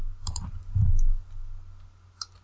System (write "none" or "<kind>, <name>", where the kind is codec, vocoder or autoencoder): none